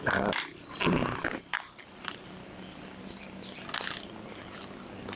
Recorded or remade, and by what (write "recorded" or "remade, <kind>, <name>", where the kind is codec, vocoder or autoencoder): recorded